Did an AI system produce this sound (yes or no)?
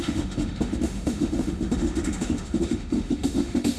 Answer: yes